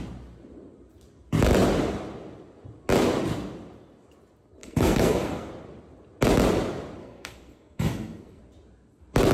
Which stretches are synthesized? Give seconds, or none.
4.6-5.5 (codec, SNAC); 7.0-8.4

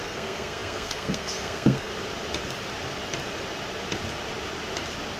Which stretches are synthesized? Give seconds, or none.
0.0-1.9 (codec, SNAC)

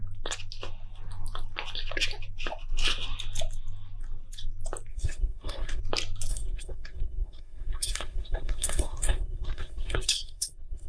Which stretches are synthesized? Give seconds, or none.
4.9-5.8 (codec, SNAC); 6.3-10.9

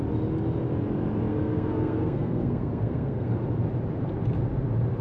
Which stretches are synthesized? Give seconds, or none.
1.3-3.3 (codec, SNAC)

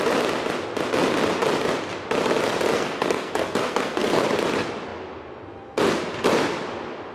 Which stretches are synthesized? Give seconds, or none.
2.7-4.2 (codec, SNAC)

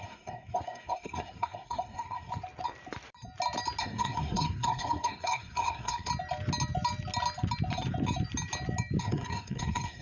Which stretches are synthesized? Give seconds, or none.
0.0-2.3 (codec, SNAC); 3.8-6.1; 9.0-10.0

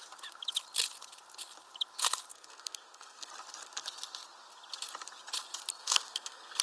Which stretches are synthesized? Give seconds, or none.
2.3-3.3 (codec, SNAC); 5.8-6.6